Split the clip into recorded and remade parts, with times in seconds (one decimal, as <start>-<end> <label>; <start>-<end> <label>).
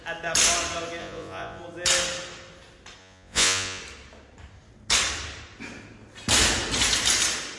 0.0-1.0 recorded; 1.0-1.6 remade; 1.6-3.0 recorded; 3.0-3.8 remade; 3.8-7.6 recorded